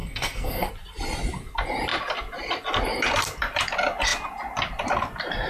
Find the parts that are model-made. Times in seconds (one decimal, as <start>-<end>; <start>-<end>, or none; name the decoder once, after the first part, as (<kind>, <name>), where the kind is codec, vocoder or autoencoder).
0.0-0.7 (codec, SNAC)